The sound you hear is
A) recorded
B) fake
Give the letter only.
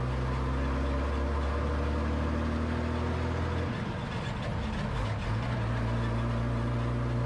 A